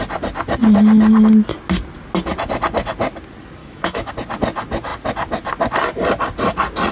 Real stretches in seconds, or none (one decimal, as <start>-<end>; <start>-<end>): 0.0-3.6; 4.1-6.9